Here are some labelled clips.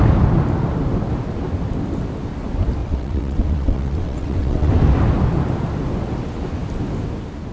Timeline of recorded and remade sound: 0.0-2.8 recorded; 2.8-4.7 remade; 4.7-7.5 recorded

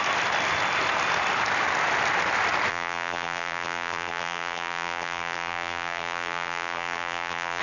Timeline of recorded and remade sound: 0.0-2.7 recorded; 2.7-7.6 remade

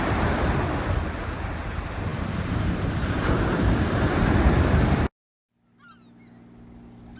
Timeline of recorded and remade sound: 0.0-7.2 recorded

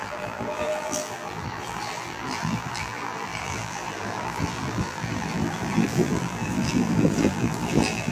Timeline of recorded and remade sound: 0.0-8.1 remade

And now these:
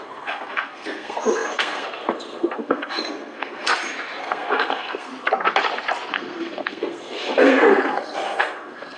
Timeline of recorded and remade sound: 0.0-3.7 remade; 3.7-4.2 recorded; 4.2-5.1 remade; 5.1-6.1 recorded; 6.1-9.0 remade

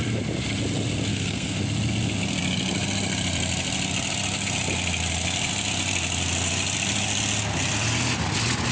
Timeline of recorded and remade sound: 0.0-1.1 recorded; 1.1-1.6 remade; 1.6-8.7 recorded

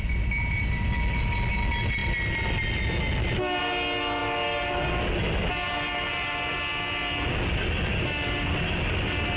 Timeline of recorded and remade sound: 0.0-9.4 recorded

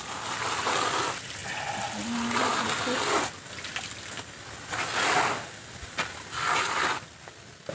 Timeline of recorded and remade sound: 0.0-7.7 recorded